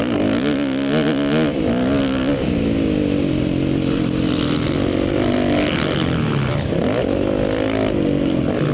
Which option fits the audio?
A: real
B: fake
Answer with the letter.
A